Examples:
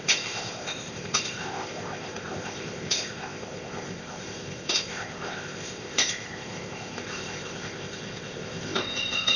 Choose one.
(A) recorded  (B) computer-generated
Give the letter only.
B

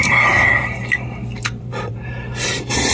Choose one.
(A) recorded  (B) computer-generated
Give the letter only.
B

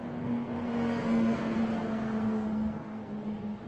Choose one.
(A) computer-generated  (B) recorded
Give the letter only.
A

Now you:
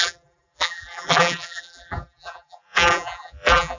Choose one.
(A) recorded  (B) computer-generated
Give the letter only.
B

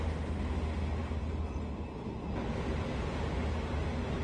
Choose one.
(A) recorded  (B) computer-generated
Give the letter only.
A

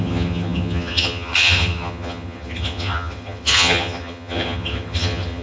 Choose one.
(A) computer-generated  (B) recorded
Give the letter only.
A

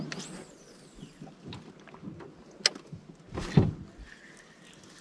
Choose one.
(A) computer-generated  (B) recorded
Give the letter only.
B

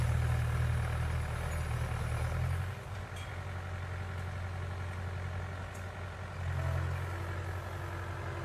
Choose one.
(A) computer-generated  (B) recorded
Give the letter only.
B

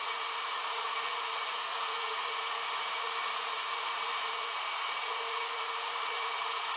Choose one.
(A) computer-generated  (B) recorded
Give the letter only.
A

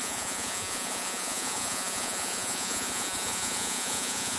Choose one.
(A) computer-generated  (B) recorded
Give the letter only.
A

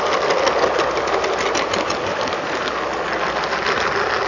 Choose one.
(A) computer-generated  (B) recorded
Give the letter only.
B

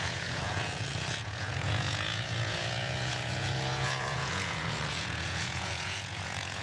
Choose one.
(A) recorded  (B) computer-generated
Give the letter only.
B